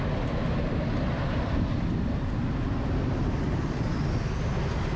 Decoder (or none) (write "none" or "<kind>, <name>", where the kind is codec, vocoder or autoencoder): none